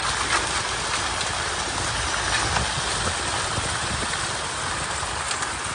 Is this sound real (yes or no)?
yes